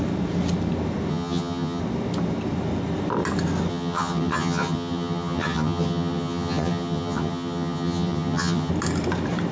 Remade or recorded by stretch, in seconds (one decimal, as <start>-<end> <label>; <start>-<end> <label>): 0.0-1.1 recorded; 1.1-1.8 remade; 1.8-3.7 recorded; 3.7-8.7 remade; 8.7-9.5 recorded